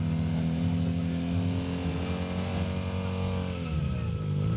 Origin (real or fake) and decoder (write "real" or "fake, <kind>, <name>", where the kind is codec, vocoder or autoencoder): real